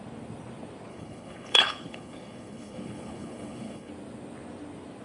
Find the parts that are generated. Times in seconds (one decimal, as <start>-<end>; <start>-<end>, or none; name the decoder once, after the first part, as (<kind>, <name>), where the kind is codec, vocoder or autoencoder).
0.9-3.9 (codec, HILCodec)